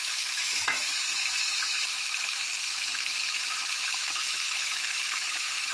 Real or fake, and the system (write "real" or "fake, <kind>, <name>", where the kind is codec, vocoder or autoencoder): fake, autoencoder, DAC-VAE